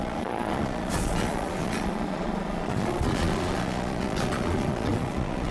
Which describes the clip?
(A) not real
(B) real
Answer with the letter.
A